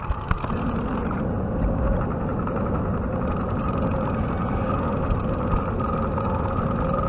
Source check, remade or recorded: recorded